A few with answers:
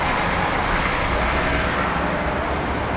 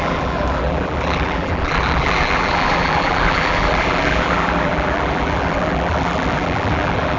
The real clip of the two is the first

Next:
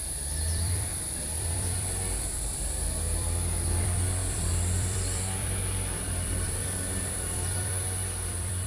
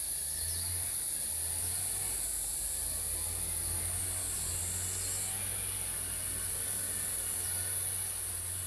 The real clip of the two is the second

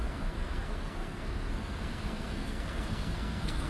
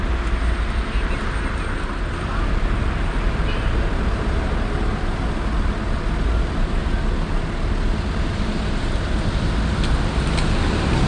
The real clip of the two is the second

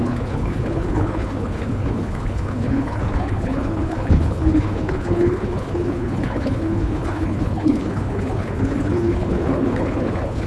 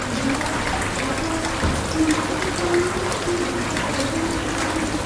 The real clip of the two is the second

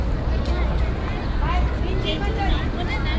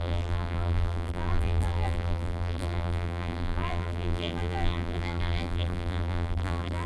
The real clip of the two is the first